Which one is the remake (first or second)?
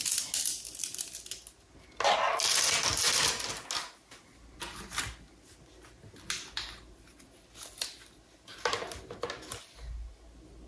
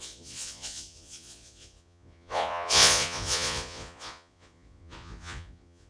second